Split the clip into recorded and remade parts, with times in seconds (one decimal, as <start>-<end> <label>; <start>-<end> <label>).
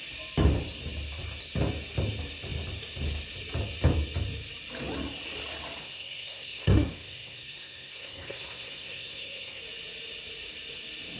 0.0-5.8 recorded; 5.8-9.6 remade; 9.6-11.2 recorded